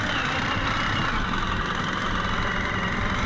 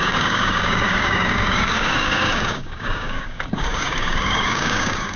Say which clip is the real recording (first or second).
first